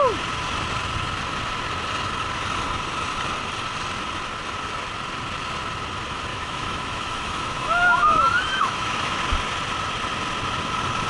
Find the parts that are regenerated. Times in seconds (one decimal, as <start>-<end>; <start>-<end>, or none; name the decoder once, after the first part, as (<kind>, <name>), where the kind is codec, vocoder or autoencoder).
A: 6.3-9.2 (autoencoder, DAC-VAE)